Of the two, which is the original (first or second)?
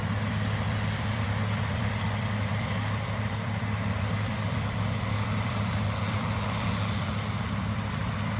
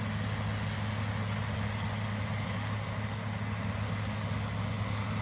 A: second